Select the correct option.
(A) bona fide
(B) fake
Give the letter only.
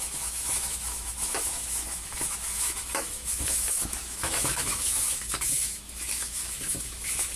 B